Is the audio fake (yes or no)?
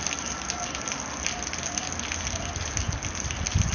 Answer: no